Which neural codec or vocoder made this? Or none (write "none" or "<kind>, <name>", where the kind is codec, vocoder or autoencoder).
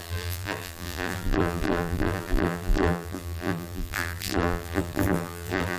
vocoder, BigVGAN v2